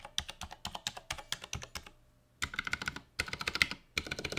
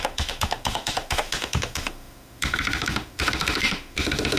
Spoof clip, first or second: second